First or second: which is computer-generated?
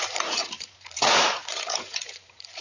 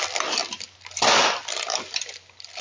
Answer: first